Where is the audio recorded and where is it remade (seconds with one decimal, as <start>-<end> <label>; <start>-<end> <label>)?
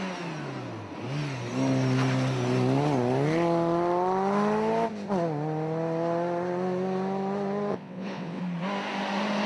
0.0-7.7 recorded; 7.7-8.4 remade; 8.4-9.5 recorded